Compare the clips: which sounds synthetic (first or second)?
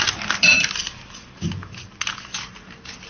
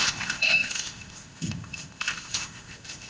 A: second